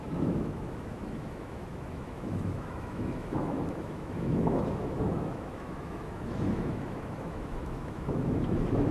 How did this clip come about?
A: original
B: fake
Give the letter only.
B